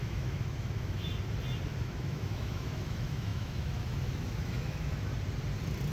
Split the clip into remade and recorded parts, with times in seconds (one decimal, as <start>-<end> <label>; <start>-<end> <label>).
0.0-1.1 remade; 1.1-1.8 recorded; 1.8-5.1 remade; 5.1-5.9 recorded